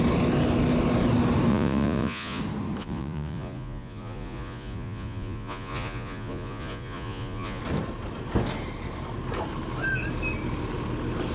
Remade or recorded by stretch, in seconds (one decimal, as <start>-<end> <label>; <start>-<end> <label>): 0.0-1.5 recorded; 1.5-2.4 remade; 2.4-2.8 recorded; 2.8-7.6 remade; 7.6-11.3 recorded